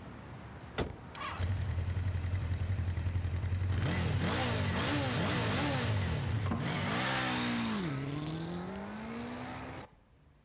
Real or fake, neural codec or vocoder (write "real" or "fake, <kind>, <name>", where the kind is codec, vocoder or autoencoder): real